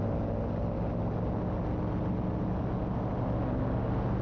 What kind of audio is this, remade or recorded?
recorded